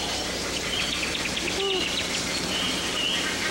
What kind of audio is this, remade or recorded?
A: recorded